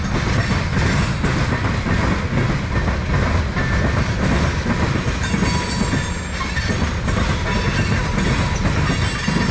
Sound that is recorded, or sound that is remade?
recorded